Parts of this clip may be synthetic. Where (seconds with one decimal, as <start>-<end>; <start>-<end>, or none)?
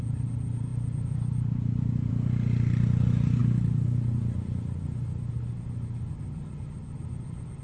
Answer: none